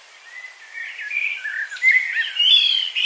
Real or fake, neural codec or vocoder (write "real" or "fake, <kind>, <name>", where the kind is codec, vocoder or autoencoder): fake, vocoder, BigVGAN v2